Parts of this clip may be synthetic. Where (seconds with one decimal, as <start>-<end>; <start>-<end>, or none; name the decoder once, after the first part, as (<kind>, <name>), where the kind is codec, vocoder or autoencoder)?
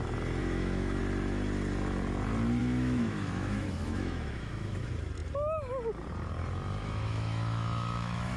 0.4-1.0 (autoencoder, DAC-VAE); 2.6-4.8; 6.8-8.4